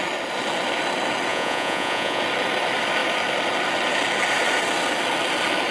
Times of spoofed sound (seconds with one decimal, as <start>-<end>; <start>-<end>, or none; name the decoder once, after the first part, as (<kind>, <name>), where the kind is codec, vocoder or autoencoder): 1.3-2.2 (vocoder, Vocos)